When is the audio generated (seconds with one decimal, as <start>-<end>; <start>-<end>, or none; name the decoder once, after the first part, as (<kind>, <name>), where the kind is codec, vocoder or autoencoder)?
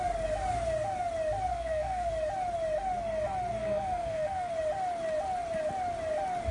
1.5-2.1 (codec, SNAC); 3.6-4.5